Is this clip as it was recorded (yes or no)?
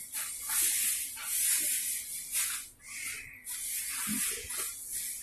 yes